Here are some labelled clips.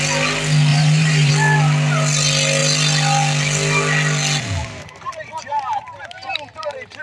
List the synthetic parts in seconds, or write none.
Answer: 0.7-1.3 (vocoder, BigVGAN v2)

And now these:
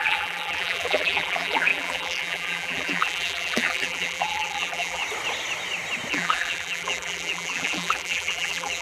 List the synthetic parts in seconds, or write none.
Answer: 0.0-5.0 (vocoder, BigVGAN v2); 6.1-8.8

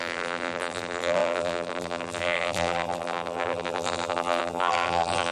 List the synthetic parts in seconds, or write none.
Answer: 0.0-5.3 (vocoder, BigVGAN v2)